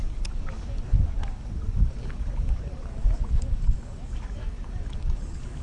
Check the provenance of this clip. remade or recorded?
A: remade